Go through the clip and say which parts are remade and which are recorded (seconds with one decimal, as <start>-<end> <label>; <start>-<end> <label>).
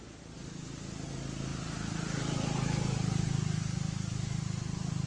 0.0-5.1 recorded